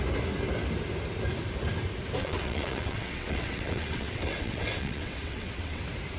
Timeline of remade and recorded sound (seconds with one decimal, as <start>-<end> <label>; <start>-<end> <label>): 0.0-2.2 recorded; 2.2-5.8 remade; 5.8-6.2 recorded